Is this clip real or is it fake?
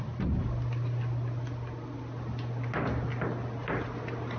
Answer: real